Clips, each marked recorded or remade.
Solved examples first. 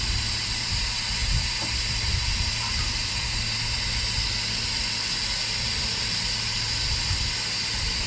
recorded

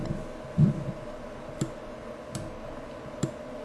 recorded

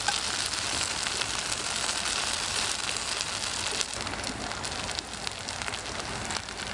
recorded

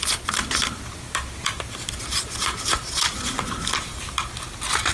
recorded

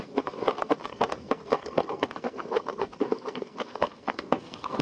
remade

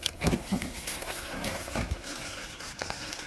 remade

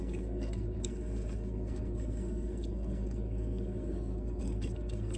remade